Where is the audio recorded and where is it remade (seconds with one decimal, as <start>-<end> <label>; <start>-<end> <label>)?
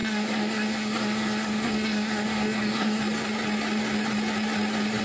0.0-3.0 remade; 3.0-5.0 recorded